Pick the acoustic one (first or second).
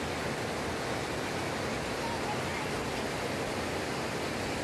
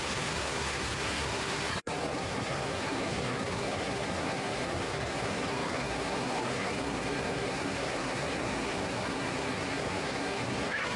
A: first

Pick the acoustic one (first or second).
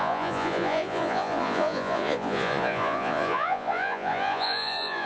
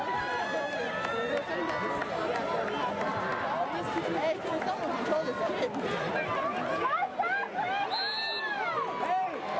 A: second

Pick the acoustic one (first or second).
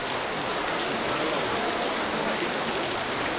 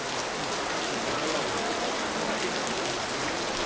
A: second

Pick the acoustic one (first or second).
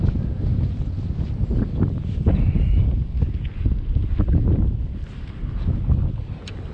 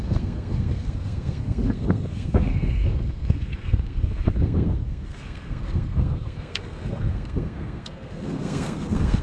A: first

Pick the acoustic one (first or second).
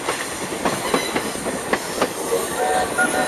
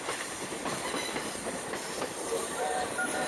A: first